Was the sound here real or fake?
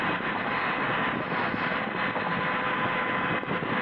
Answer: real